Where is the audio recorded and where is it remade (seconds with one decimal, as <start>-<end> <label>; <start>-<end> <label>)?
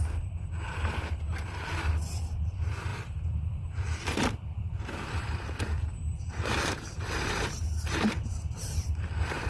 0.0-2.9 recorded; 2.9-7.1 remade; 7.1-9.5 recorded